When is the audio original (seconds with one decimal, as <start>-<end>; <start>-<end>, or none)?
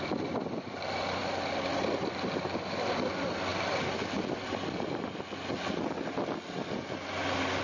0.0-7.6